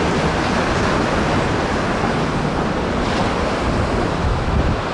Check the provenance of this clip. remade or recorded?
recorded